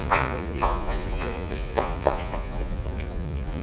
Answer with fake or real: fake